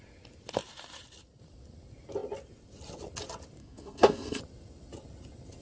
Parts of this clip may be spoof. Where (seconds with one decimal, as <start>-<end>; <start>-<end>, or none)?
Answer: 3.6-4.4